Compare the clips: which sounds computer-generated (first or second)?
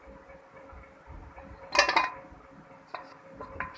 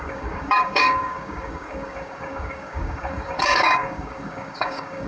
second